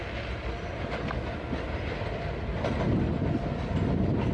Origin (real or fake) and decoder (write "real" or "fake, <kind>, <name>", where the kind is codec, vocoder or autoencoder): real